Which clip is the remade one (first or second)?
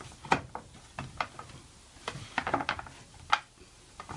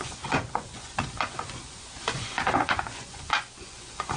second